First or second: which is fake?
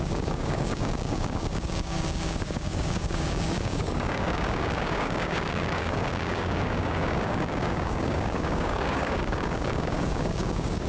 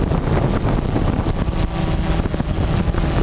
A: first